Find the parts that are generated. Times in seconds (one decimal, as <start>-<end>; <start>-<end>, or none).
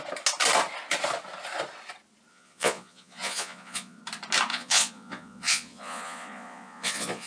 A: 2.3-4.0; 4.5-7.3